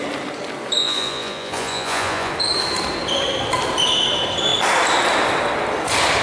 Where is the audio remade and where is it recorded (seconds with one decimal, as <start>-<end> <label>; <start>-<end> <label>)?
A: 0.0-0.8 recorded; 0.8-2.3 remade; 2.3-6.2 recorded